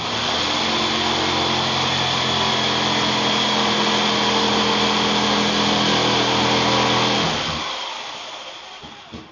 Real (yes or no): yes